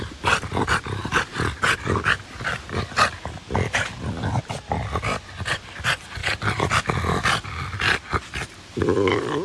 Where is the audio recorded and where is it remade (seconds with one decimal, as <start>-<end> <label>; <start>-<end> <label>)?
0.0-6.2 recorded; 6.2-6.8 remade; 6.8-9.4 recorded